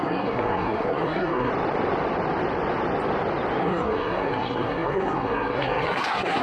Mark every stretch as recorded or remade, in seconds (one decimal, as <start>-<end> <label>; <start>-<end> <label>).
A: 0.0-1.5 remade; 1.5-3.6 recorded; 3.6-6.4 remade